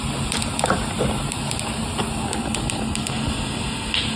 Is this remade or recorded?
recorded